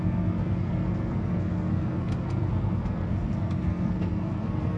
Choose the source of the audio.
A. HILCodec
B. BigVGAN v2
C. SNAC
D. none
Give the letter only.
C